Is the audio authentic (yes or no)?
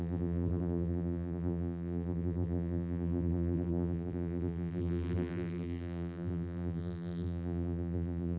no